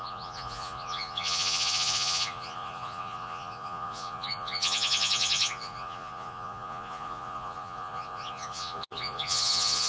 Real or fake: fake